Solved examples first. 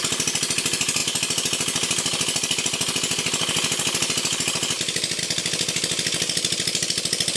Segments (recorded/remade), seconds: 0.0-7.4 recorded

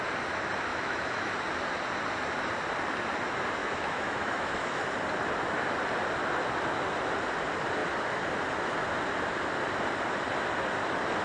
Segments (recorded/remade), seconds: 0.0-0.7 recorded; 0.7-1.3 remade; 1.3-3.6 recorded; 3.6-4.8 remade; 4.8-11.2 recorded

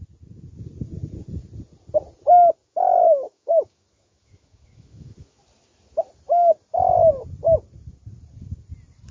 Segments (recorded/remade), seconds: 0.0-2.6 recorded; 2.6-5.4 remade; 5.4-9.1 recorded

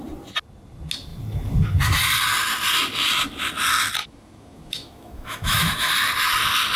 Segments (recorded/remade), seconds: 0.0-4.0 recorded; 4.0-5.9 remade; 5.9-6.8 recorded

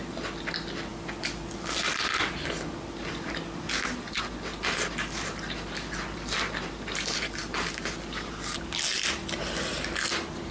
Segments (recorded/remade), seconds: 0.0-10.5 recorded

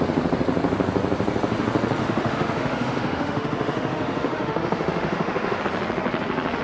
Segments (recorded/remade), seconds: 0.0-2.0 recorded; 2.0-5.6 remade; 5.6-6.6 recorded

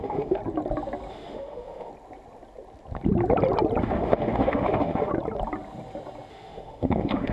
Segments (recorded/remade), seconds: 0.0-0.4 remade; 0.4-1.1 recorded; 1.1-1.9 remade; 1.9-3.8 recorded; 3.8-5.1 remade; 5.1-6.3 recorded; 6.3-7.3 remade